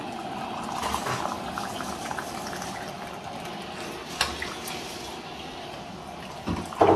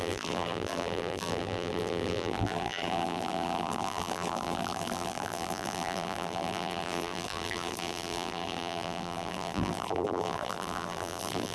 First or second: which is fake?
second